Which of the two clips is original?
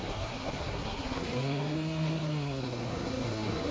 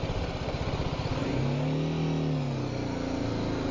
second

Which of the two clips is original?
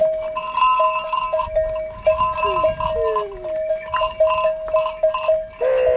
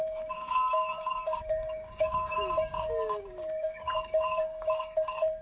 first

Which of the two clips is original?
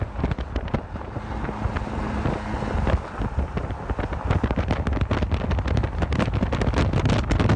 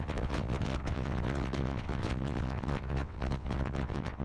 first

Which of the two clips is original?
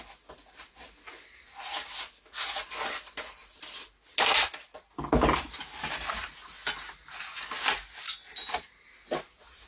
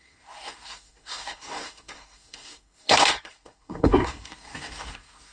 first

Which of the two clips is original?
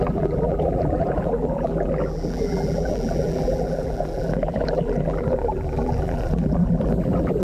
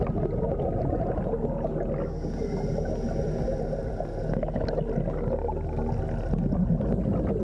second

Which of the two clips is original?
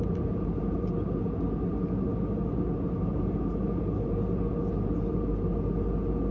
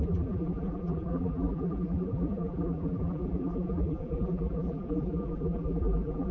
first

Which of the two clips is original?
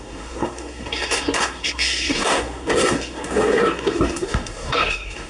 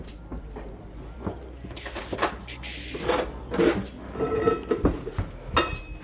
second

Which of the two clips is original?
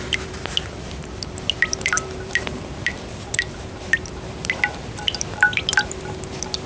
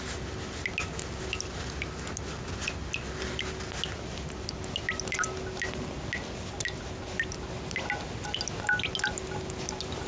second